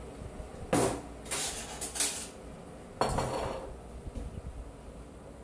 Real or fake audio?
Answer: real